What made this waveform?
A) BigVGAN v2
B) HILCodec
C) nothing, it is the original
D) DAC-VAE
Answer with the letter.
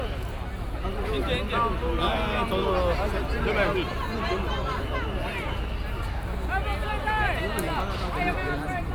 C